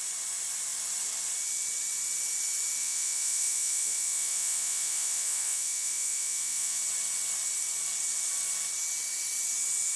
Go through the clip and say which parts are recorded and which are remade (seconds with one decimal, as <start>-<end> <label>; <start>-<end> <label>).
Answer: 0.0-2.8 recorded; 2.8-6.8 remade; 6.8-10.0 recorded